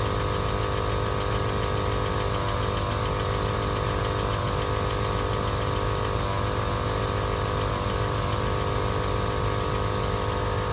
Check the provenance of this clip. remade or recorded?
recorded